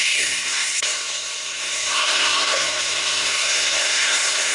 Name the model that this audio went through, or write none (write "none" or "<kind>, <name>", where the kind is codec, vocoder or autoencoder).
codec, SNAC